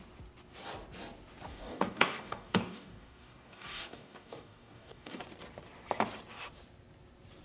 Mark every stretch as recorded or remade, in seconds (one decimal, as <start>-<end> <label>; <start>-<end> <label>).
0.0-1.5 recorded; 1.5-5.2 remade; 5.2-7.4 recorded